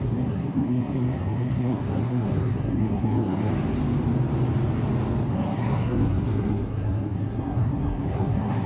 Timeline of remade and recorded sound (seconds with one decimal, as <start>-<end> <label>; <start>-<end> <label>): 0.0-3.5 remade; 3.5-5.3 recorded; 5.3-8.7 remade